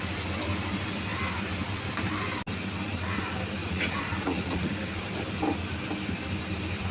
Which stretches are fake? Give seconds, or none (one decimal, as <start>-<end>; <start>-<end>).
3.6-4.7